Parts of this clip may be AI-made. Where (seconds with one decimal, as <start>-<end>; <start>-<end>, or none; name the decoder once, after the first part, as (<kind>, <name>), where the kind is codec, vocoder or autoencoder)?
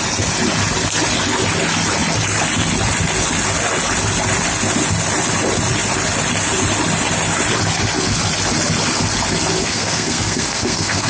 9.6-11.1 (codec, SNAC)